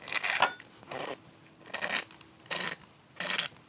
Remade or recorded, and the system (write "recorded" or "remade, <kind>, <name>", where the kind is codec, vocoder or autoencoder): recorded